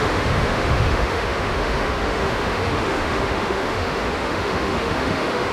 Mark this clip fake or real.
fake